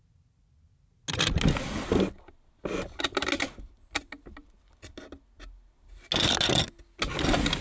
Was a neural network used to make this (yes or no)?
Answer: no